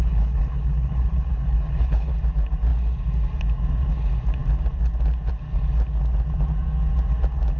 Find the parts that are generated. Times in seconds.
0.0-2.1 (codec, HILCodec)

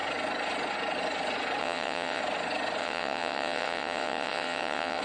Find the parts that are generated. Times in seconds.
1.6-2.2 (vocoder, WaveNeXt); 2.8-5.0

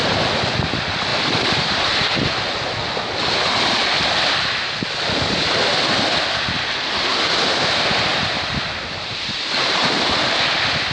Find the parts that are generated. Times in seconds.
1.1-1.9 (vocoder, BigVGAN v2); 8.1-10.2

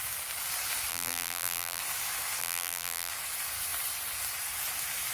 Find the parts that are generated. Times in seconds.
0.9-1.8 (vocoder, BigVGAN v2); 2.4-3.1

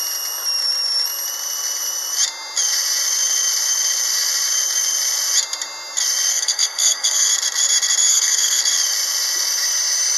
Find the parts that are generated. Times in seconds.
6.3-7.3 (codec, SNAC); 8.1-8.6